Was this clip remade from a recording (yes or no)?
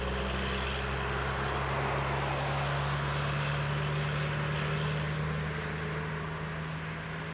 no